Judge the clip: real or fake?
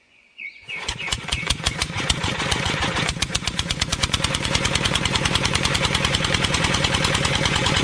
fake